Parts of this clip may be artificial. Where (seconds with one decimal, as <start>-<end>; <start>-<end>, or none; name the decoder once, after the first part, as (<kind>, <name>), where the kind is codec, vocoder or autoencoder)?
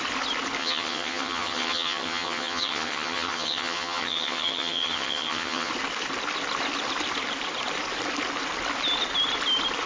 0.6-5.7 (vocoder, HiFi-GAN)